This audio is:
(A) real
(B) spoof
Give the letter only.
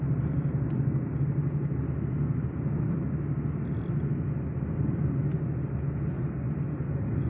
A